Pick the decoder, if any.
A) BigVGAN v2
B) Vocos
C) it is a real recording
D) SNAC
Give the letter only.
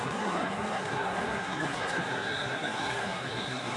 D